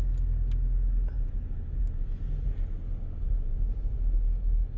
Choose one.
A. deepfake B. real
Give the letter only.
B